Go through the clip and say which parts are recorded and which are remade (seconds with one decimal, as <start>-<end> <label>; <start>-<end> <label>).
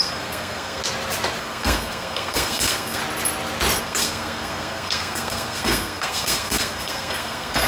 0.0-0.8 remade; 0.8-1.4 recorded; 1.4-3.0 remade; 3.0-3.8 recorded; 3.8-7.7 remade